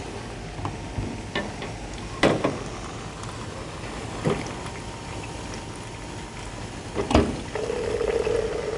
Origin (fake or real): real